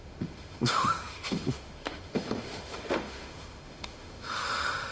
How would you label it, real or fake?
fake